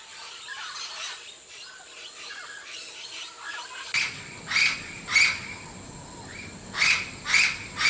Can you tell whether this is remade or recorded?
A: recorded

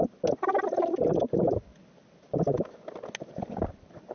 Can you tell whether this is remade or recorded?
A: recorded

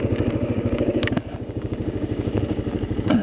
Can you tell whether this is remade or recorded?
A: remade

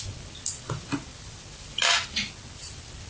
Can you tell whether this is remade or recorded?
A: recorded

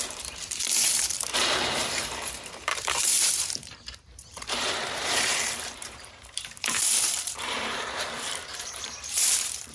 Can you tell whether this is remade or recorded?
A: remade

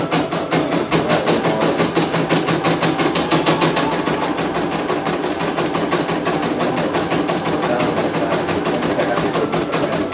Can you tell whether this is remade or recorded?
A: recorded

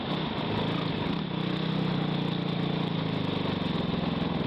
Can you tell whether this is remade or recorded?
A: recorded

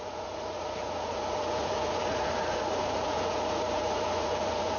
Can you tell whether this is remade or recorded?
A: remade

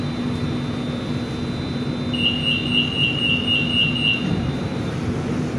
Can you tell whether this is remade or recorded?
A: recorded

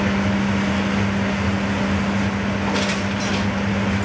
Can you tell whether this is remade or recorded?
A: recorded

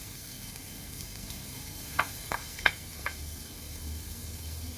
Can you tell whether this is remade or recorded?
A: remade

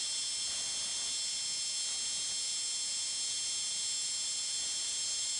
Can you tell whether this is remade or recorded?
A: recorded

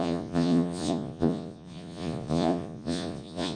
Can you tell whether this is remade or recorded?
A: remade